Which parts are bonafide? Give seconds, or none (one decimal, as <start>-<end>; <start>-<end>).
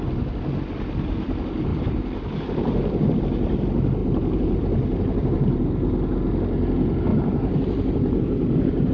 0.0-1.7; 3.2-4.0; 5.9-7.1